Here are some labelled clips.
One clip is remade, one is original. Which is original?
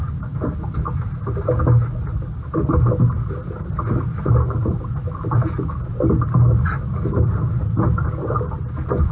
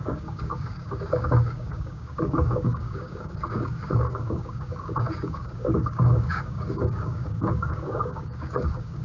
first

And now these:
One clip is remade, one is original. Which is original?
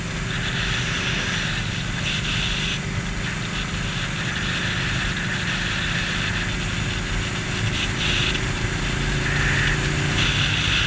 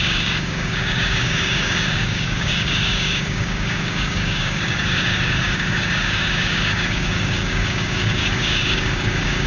first